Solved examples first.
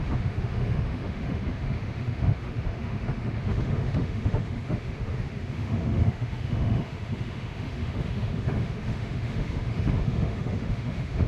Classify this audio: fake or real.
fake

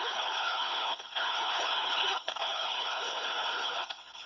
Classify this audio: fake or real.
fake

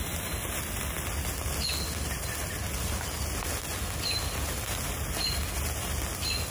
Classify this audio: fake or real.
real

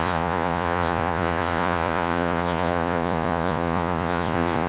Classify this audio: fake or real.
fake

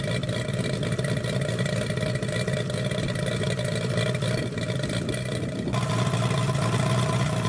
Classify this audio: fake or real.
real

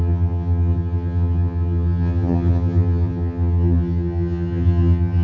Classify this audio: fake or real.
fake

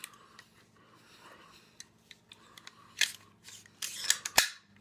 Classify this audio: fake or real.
real